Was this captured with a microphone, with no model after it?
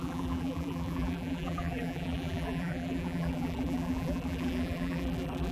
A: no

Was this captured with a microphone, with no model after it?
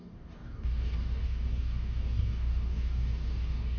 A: no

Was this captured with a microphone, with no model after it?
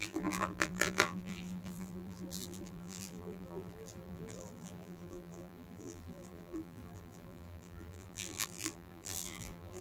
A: no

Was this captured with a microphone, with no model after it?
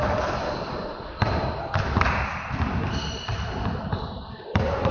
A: yes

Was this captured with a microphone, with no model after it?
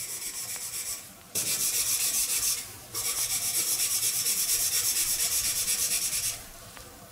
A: no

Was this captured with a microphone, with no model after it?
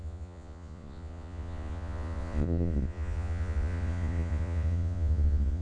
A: no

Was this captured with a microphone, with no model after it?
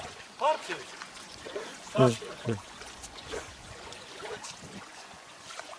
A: no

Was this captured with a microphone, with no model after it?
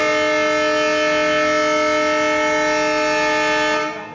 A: yes